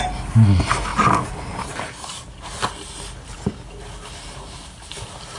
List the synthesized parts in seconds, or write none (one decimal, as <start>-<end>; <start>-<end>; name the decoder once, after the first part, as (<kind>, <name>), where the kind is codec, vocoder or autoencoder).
none